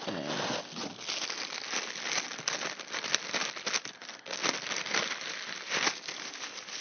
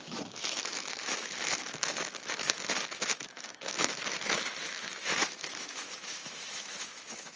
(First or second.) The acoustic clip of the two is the first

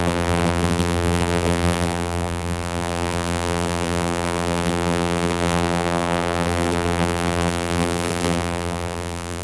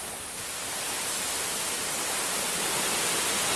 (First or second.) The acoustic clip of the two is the second